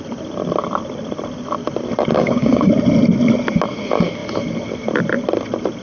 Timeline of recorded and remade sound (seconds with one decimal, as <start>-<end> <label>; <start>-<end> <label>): 0.0-2.1 recorded; 2.1-2.7 remade; 2.7-5.8 recorded